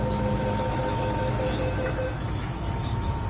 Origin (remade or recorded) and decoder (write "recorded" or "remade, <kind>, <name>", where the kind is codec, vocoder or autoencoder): remade, autoencoder, DAC-VAE